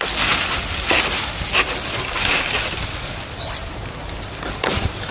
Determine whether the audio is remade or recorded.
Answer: recorded